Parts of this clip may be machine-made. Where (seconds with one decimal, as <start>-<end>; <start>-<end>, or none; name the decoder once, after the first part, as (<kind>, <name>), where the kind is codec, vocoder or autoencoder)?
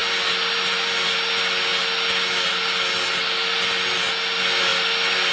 none